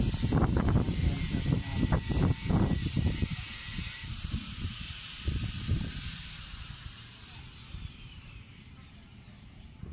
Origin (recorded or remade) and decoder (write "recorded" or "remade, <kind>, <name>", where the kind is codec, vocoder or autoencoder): remade, vocoder, BigVGAN v2